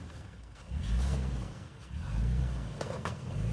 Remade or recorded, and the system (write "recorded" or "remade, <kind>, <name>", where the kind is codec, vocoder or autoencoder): remade, codec, SNAC